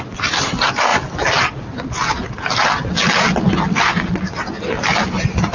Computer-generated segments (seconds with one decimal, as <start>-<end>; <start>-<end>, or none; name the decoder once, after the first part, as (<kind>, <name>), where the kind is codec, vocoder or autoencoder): 0.0-0.9 (vocoder, BigVGAN v2); 4.2-5.5